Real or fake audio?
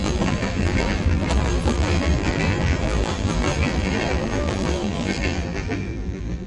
fake